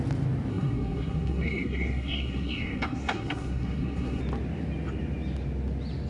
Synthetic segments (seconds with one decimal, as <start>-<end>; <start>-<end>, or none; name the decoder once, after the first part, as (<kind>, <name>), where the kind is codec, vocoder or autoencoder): 0.5-4.2 (codec, SNAC)

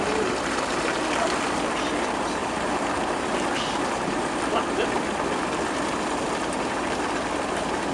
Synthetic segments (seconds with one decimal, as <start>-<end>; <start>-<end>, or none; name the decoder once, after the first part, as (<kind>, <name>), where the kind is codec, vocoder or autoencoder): 2.4-4.6 (vocoder, BigVGAN v2)

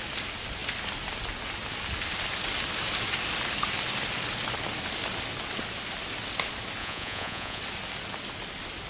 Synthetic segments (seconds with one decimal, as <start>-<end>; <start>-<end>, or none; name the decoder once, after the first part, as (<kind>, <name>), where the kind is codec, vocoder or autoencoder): 6.8-7.6 (vocoder, Vocos)

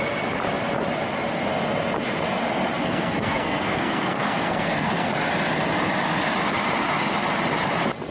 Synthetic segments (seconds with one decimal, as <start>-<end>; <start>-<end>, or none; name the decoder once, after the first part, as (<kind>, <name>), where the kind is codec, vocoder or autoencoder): 2.8-5.1 (codec, SNAC)

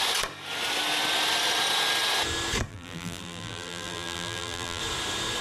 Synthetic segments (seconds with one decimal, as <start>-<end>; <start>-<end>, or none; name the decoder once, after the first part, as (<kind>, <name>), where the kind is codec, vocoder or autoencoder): 2.7-4.8 (vocoder, BigVGAN v2)